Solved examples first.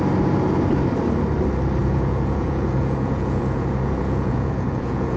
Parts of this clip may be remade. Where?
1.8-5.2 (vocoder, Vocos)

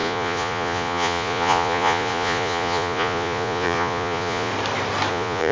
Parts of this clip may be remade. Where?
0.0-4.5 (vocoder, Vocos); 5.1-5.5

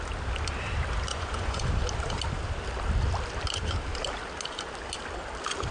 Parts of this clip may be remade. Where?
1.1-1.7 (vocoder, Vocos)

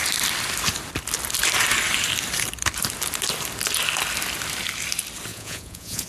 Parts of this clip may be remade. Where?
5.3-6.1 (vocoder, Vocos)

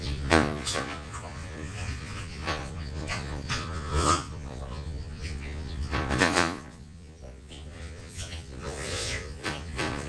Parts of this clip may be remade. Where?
0.0-10.1 (vocoder, Vocos)

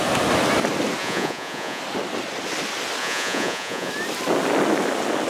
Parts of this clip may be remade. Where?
1.0-1.8 (vocoder, Vocos); 3.0-3.9

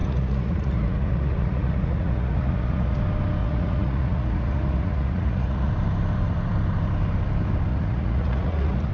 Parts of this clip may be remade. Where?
0.0-3.0 (vocoder, Vocos); 3.4-5.7; 7.7-8.9